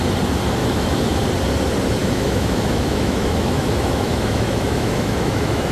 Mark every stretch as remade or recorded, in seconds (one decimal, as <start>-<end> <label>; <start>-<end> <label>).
0.0-0.6 recorded; 0.6-1.2 remade; 1.2-2.0 recorded; 2.0-5.7 remade